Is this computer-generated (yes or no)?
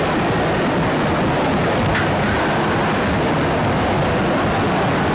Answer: no